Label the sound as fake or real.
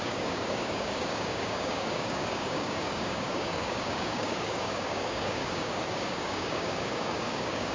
fake